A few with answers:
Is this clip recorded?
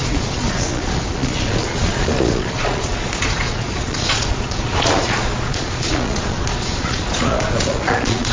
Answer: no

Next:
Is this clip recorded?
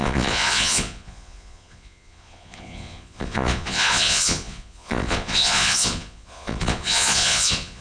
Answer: no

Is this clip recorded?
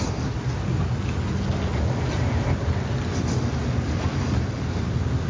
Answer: yes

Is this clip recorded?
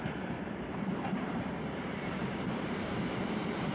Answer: no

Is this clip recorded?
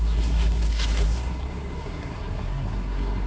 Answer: no